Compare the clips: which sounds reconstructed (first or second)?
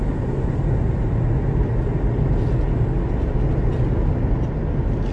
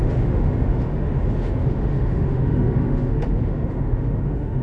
second